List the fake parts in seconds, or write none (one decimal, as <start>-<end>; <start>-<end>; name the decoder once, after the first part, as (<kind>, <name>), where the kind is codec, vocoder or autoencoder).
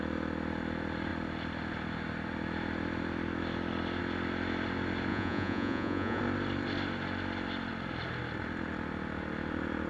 5.1-6.2 (vocoder, Vocos)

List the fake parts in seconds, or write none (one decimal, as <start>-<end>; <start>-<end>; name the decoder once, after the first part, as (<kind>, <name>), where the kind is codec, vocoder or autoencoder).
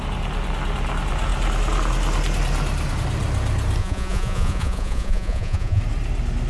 3.8-5.8 (vocoder, Vocos)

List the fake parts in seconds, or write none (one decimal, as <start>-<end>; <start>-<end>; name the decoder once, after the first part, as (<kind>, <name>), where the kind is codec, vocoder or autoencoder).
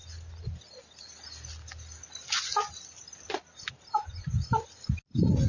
none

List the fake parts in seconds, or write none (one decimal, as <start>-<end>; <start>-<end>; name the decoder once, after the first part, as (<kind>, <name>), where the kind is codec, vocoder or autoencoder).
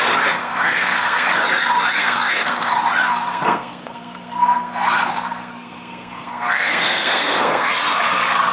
0.4-1.3 (codec, SNAC); 2.0-2.7; 3.1-7.7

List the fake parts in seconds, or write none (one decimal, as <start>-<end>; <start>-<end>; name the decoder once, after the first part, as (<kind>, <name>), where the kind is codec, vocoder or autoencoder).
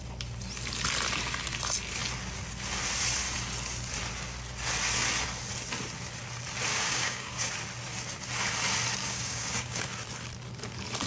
6.7-7.5 (codec, DAC); 9.0-9.8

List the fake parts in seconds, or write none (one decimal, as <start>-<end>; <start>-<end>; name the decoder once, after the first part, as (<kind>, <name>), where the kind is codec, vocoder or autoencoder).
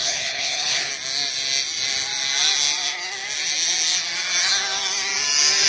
0.0-0.9 (codec, HILCodec)